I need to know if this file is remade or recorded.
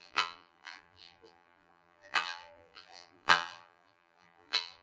remade